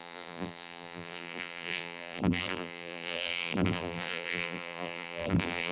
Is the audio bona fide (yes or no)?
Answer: no